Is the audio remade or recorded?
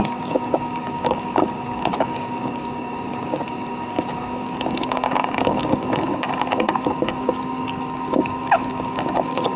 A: remade